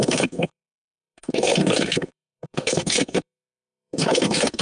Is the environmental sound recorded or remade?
remade